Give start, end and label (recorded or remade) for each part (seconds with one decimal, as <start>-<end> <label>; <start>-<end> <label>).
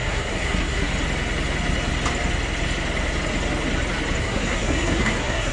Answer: 0.0-0.9 remade; 0.9-4.2 recorded; 4.2-5.5 remade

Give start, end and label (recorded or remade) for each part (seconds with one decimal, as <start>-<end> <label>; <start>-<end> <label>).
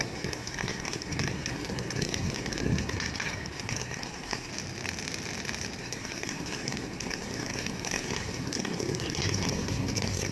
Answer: 0.0-4.5 remade; 4.5-5.8 recorded; 5.8-10.3 remade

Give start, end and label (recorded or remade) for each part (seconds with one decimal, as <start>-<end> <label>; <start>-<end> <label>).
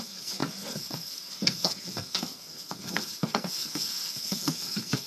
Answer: 0.0-5.1 remade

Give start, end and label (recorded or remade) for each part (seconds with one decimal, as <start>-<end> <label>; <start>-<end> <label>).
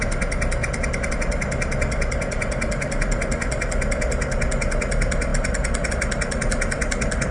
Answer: 0.0-7.3 recorded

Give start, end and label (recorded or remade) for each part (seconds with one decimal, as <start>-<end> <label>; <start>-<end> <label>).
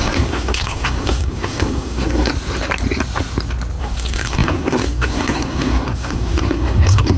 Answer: 0.0-2.3 remade; 2.3-3.8 recorded; 3.8-7.2 remade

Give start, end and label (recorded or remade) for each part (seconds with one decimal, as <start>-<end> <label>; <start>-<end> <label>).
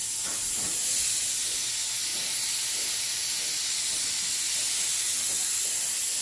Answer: 0.0-6.2 recorded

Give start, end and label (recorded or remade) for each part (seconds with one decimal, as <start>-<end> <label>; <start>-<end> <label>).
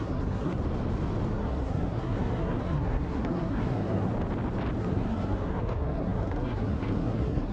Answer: 0.0-0.6 remade; 0.6-1.3 recorded; 1.3-4.1 remade; 4.1-4.8 recorded; 4.8-7.5 remade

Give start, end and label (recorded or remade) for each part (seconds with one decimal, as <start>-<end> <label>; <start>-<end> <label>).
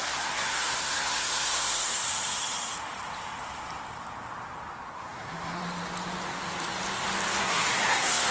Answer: 0.0-2.0 remade; 2.0-4.9 recorded; 4.9-5.6 remade; 5.6-7.4 recorded; 7.4-8.3 remade